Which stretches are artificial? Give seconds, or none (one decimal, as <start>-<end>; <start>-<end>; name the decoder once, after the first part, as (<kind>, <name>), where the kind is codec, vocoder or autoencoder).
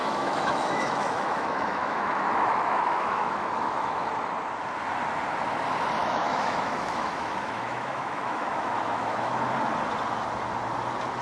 0.0-4.1 (autoencoder, DAC-VAE); 6.0-9.5